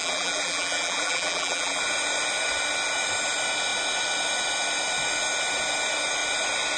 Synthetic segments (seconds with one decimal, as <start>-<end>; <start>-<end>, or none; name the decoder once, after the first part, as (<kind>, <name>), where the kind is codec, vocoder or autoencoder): 0.0-1.8 (vocoder, BigVGAN v2)